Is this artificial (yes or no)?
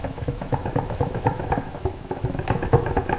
yes